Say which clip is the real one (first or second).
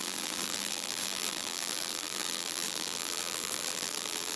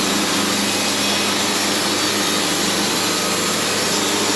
second